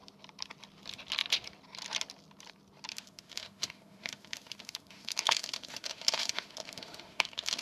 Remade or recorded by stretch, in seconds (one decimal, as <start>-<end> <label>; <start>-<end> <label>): 0.0-2.9 recorded; 2.9-7.6 remade